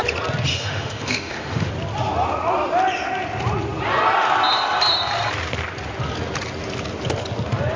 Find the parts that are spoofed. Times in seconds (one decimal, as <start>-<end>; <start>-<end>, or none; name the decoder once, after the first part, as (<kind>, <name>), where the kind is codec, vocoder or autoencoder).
0.5-1.7 (autoencoder, DAC-VAE)